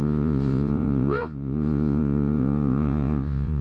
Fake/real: fake